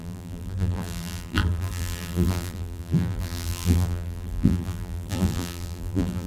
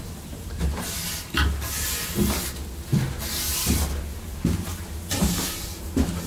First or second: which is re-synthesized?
first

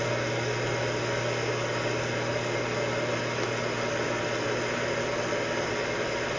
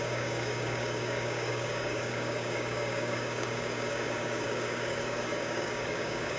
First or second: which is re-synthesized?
second